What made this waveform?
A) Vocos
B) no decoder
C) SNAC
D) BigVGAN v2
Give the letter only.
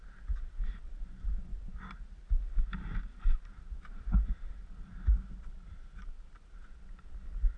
B